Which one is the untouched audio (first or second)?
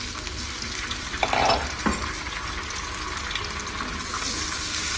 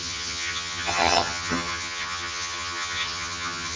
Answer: first